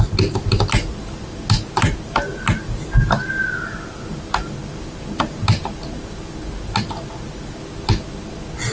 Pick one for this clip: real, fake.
real